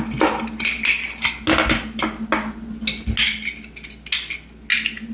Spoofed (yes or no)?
no